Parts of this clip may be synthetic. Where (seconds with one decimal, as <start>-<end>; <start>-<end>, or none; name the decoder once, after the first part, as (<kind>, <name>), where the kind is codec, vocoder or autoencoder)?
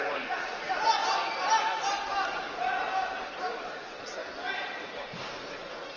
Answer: 0.0-1.0 (vocoder, Vocos); 2.3-2.8; 3.5-4.2; 5.0-6.0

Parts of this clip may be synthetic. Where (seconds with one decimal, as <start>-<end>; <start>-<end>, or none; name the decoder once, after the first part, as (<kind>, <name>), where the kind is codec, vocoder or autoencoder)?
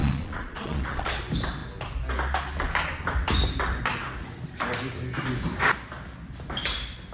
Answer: 0.0-1.2 (vocoder, Vocos)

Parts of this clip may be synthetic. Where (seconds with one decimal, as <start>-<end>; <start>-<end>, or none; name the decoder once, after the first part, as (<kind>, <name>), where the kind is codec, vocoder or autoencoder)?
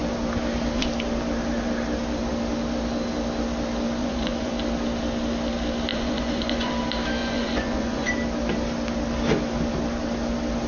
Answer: 4.0-4.5 (vocoder, Vocos); 5.9-6.7; 7.2-8.1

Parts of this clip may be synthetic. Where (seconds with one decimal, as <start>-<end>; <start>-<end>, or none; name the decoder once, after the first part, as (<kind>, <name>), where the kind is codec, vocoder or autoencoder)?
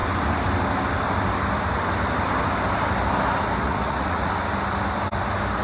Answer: 3.6-4.3 (vocoder, Vocos)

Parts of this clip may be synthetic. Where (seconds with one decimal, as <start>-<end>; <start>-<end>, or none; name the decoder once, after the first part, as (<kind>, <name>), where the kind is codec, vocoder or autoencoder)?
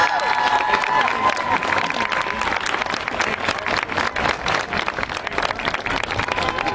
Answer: none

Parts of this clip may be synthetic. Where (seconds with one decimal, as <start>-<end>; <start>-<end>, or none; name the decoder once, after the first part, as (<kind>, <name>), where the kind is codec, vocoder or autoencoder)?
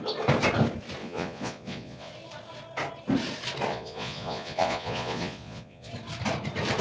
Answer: 1.0-2.1 (vocoder, Vocos); 3.7-5.9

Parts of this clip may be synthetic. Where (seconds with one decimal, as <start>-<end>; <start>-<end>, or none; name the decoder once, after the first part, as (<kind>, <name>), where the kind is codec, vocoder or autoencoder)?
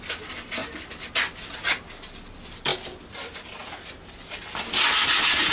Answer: none